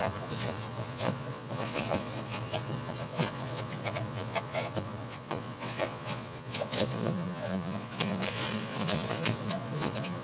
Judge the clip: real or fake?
fake